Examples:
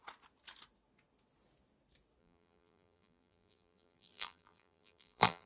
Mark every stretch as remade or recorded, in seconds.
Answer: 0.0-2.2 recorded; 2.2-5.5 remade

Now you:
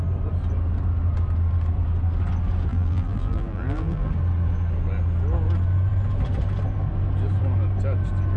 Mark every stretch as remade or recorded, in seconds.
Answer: 0.0-2.7 recorded; 2.7-4.1 remade; 4.1-8.4 recorded